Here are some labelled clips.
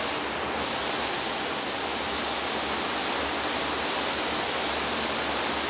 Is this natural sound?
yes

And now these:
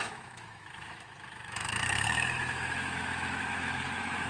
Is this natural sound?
no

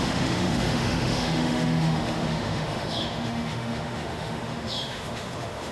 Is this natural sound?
no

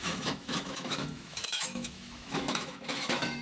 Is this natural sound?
no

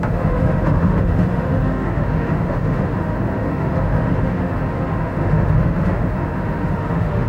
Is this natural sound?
no